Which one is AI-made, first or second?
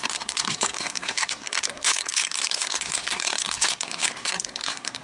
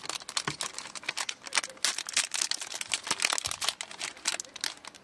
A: first